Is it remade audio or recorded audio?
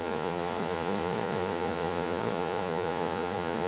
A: remade